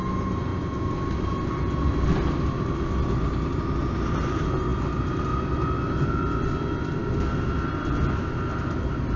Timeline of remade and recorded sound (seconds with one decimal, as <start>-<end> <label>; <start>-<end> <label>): 0.0-9.2 recorded